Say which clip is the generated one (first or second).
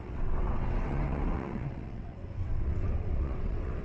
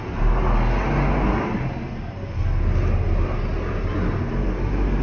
first